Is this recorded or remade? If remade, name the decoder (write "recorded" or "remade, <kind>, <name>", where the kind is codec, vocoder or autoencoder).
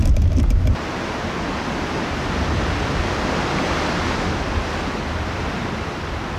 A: recorded